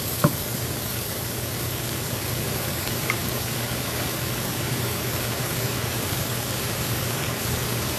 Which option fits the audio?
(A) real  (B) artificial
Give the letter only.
B